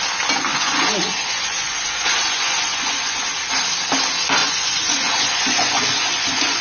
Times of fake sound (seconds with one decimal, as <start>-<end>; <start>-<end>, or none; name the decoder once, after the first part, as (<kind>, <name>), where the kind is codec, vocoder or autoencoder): 0.5-3.2 (vocoder, Vocos); 4.4-6.6